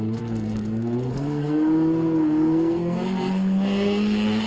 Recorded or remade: remade